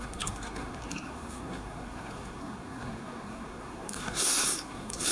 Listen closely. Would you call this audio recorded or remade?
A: remade